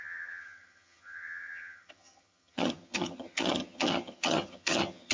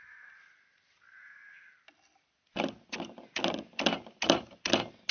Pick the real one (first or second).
second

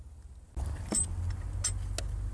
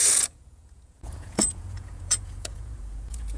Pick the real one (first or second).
first